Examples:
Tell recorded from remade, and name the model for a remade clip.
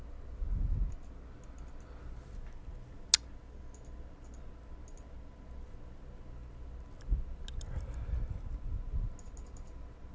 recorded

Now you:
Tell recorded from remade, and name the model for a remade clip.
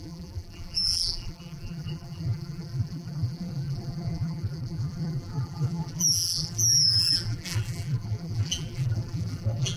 remade, vocoder, BigVGAN v2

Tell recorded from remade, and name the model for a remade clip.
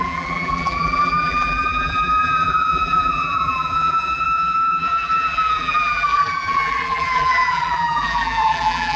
remade, vocoder, BigVGAN v2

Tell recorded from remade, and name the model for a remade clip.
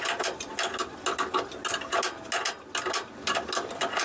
recorded